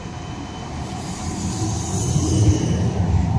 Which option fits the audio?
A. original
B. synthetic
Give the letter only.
A